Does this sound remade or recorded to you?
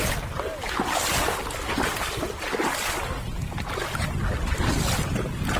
recorded